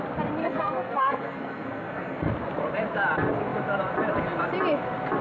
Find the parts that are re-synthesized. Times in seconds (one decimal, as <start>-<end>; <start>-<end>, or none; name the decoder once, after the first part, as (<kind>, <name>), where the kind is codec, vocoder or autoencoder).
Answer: 0.4-2.3 (codec, SNAC)